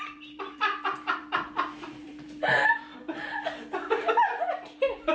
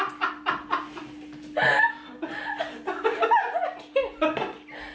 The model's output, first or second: first